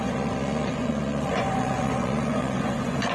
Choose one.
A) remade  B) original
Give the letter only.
A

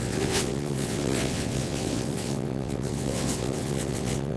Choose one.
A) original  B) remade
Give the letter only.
B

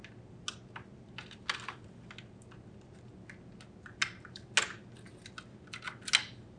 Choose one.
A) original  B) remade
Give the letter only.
A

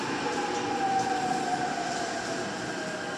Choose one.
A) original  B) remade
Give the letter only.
A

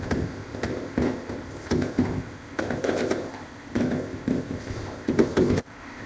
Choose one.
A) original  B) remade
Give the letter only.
B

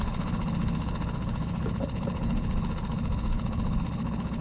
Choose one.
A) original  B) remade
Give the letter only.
B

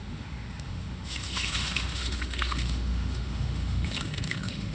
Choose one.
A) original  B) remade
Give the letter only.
B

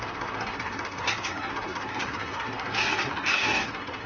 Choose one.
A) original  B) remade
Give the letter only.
B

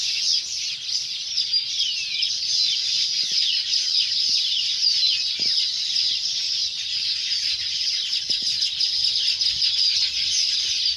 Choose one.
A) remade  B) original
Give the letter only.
B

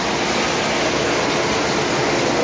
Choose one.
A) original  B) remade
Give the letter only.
A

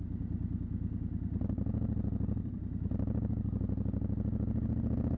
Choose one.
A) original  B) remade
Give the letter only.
A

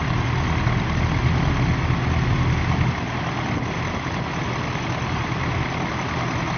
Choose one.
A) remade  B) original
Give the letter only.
B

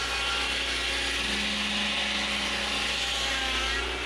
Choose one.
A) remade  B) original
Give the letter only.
B